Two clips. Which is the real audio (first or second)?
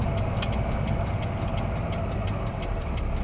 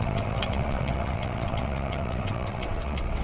first